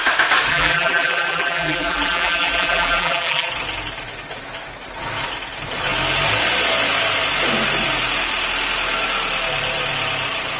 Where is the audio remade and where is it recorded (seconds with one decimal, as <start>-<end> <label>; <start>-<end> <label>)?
0.0-0.5 recorded; 0.5-3.5 remade; 3.5-10.6 recorded